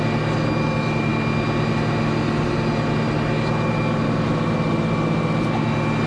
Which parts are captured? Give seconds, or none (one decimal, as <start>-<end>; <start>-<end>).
0.0-6.1